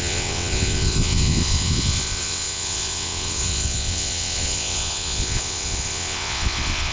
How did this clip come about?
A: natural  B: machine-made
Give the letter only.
B